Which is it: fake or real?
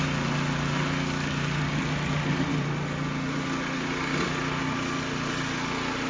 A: real